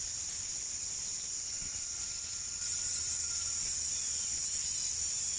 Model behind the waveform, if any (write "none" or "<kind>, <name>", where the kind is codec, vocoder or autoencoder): none